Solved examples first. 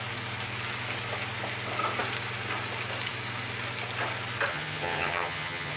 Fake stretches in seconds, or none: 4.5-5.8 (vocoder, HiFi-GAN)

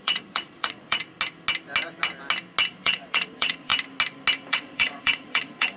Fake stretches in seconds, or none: 0.0-1.0 (vocoder, Vocos); 2.7-3.7; 4.5-5.8

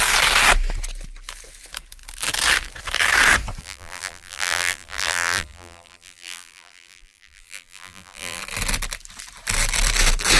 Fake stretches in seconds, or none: 3.6-8.4 (vocoder, BigVGAN v2)

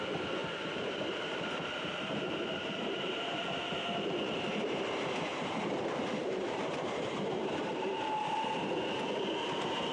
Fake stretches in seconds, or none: 0.4-3.3 (vocoder, BigVGAN v2); 6.2-8.2

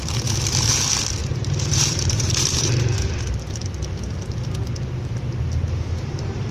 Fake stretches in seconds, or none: 1.2-3.5 (vocoder, BigVGAN v2)